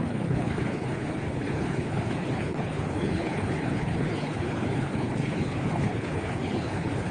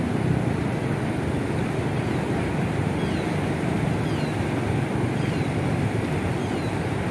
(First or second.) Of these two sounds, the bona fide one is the second